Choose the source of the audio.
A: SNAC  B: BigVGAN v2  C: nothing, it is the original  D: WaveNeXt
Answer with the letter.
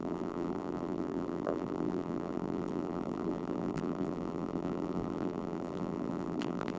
B